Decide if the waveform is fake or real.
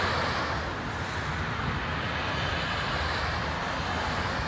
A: real